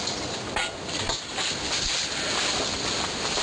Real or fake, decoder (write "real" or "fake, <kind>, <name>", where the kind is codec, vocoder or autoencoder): real